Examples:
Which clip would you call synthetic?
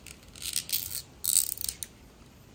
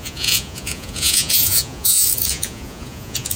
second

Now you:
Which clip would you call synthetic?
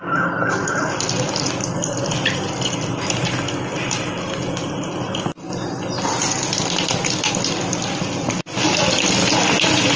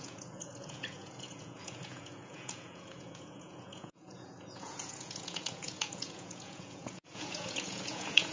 second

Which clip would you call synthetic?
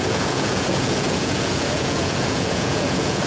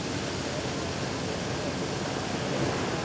first